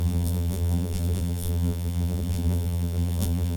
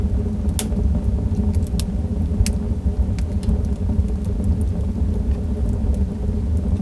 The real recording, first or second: second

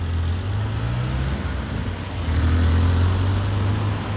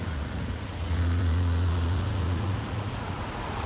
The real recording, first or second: first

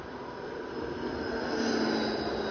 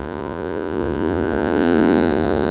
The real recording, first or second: first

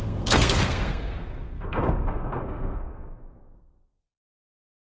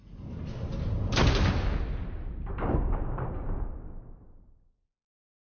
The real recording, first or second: second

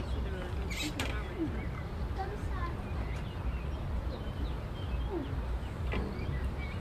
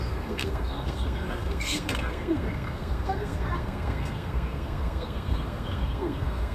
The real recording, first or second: first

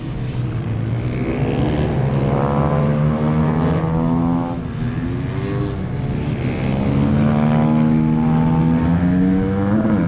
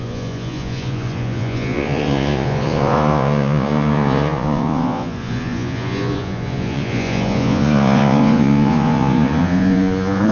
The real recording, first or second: first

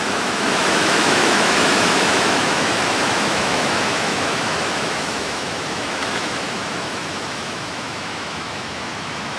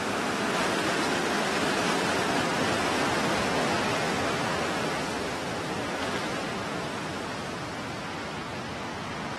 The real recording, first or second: second